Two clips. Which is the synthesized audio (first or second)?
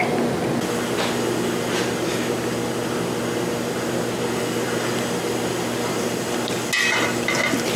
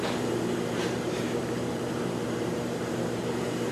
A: second